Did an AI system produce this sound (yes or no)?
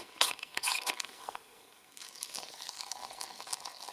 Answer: yes